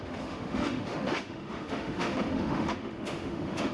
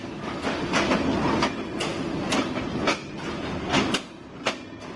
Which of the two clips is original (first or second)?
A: second